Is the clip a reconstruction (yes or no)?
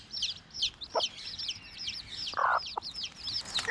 yes